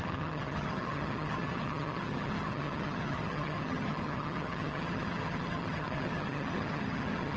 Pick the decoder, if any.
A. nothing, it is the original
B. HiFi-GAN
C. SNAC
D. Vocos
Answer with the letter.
B